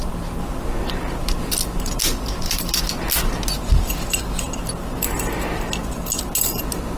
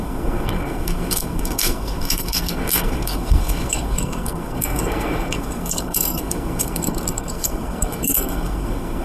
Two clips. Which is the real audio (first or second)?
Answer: first